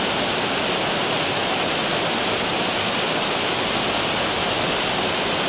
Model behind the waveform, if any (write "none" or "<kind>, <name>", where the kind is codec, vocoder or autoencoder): none